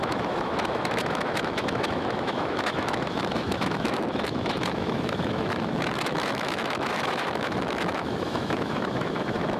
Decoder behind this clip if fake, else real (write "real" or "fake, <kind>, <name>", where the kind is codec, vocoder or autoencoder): fake, autoencoder, DAC-VAE